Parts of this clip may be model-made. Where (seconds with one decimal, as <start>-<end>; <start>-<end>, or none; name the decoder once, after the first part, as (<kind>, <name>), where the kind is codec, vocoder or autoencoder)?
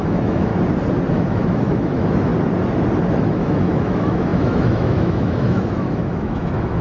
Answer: 0.0-0.5 (autoencoder, DAC-VAE); 1.1-2.3; 3.1-6.8